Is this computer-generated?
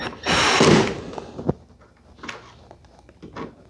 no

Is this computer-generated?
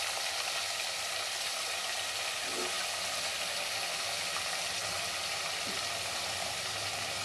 no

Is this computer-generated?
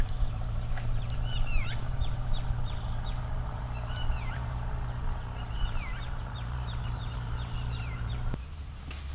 yes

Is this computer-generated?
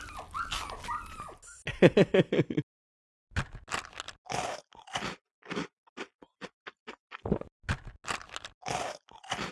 no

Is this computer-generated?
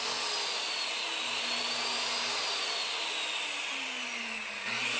no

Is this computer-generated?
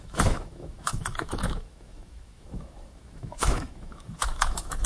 yes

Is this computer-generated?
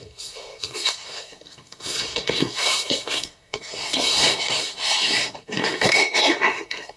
yes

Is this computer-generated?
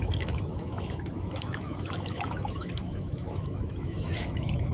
yes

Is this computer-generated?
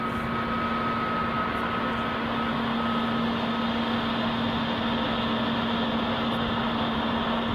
no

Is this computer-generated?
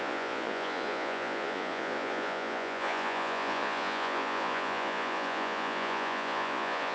yes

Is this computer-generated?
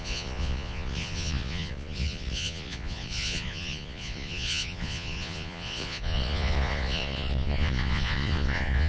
yes